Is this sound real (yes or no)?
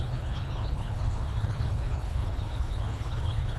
no